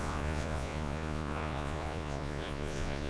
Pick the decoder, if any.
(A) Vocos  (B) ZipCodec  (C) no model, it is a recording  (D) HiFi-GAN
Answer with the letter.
A